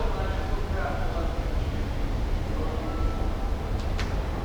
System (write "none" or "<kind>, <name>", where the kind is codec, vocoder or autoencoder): none